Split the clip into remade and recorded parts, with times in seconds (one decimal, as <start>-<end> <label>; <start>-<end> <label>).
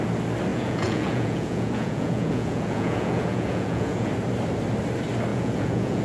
0.0-0.5 recorded; 0.5-4.1 remade; 4.1-5.3 recorded; 5.3-6.0 remade